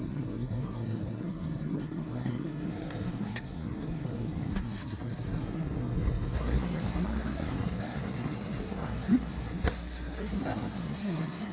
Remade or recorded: remade